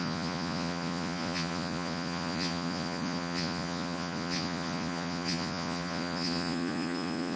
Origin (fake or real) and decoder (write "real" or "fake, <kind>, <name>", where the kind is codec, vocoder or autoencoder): fake, vocoder, Vocos